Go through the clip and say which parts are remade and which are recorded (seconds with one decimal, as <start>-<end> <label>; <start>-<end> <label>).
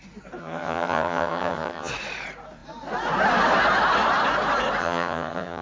0.0-0.4 recorded; 0.4-1.9 remade; 1.9-4.8 recorded; 4.8-5.6 remade